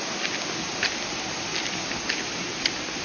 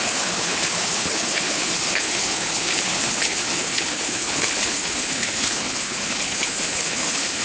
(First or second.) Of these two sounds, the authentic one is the first